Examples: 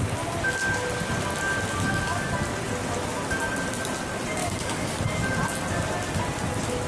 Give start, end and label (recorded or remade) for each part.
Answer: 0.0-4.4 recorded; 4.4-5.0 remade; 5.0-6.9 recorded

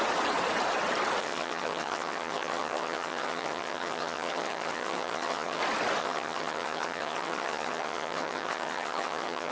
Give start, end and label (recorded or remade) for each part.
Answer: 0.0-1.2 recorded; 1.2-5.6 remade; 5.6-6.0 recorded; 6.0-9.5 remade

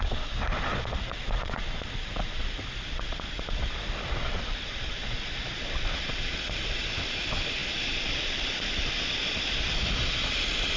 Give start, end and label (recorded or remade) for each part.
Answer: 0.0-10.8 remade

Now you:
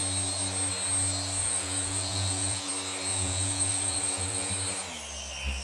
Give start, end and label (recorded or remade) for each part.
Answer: 0.0-1.4 recorded; 1.4-2.7 remade; 2.7-3.1 recorded; 3.1-4.5 remade; 4.5-5.6 recorded

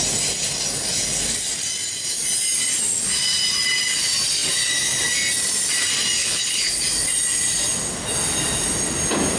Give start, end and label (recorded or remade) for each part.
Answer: 0.0-6.2 recorded; 6.2-6.8 remade; 6.8-9.4 recorded

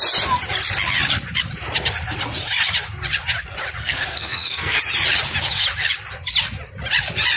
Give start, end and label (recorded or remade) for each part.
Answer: 0.0-3.8 recorded; 3.8-4.8 remade; 4.8-7.4 recorded

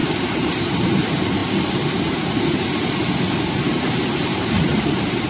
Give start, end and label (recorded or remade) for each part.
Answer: 0.0-5.3 remade

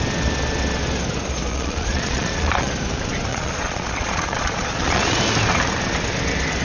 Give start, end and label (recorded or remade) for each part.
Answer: 0.0-1.5 recorded; 1.5-2.7 remade; 2.7-3.3 recorded; 3.3-5.2 remade; 5.2-6.6 recorded